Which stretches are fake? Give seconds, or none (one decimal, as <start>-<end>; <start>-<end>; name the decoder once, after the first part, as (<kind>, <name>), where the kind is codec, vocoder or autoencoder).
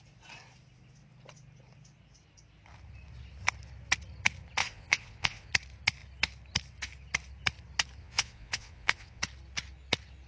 4.6-5.5 (vocoder, Vocos); 8.0-9.2